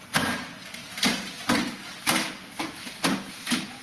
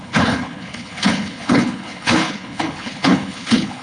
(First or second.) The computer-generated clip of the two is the second